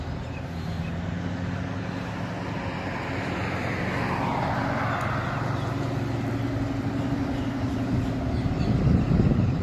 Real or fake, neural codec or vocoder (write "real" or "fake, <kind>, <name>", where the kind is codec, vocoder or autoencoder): real